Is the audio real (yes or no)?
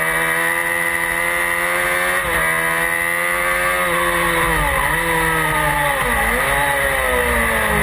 yes